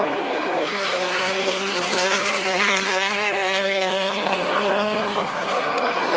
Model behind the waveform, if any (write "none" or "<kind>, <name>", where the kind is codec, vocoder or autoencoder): codec, SNAC